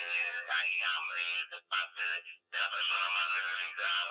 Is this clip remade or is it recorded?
remade